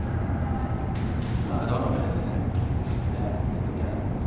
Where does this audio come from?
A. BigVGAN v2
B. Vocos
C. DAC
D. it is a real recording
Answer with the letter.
A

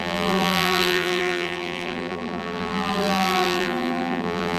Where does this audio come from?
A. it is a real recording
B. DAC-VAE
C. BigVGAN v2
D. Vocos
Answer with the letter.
C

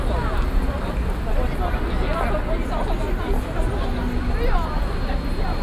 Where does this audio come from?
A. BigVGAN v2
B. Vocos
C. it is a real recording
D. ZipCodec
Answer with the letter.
C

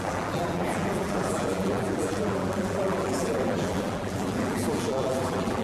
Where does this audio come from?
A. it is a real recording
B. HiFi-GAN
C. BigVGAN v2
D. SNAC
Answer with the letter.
C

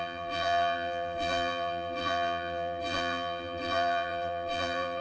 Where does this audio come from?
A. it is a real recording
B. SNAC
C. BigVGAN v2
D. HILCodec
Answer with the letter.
C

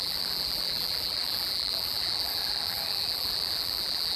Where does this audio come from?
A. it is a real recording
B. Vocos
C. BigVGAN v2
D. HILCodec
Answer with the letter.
C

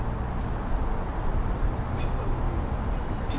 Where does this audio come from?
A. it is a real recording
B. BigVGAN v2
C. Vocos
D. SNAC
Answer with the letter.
A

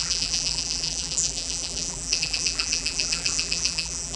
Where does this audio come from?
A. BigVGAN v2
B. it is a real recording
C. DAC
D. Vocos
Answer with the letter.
A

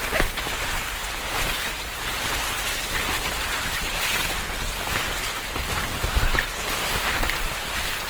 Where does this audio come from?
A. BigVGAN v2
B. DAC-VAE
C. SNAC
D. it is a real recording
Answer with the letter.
A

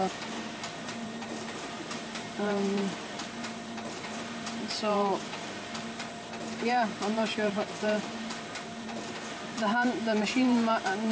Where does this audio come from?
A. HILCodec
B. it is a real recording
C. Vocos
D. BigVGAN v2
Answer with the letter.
D